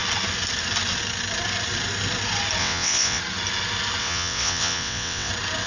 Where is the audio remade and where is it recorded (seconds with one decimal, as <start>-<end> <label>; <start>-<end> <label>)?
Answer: 0.0-2.6 recorded; 2.6-3.2 remade; 3.2-4.0 recorded; 4.0-5.3 remade; 5.3-5.7 recorded